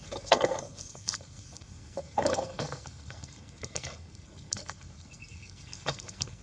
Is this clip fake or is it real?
fake